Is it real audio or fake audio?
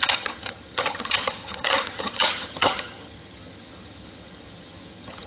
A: fake